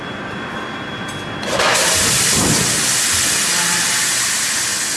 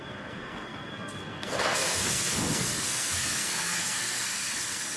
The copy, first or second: second